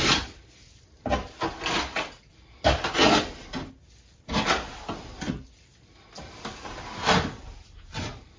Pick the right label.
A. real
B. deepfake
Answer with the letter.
A